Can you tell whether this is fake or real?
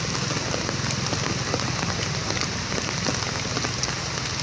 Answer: real